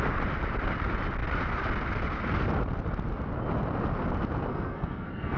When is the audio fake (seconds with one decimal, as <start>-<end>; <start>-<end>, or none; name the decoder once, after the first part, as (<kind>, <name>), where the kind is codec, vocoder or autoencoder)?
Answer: 4.5-5.4 (codec, SNAC)